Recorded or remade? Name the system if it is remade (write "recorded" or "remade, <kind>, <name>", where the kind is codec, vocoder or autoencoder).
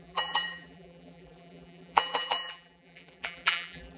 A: remade, vocoder, BigVGAN v2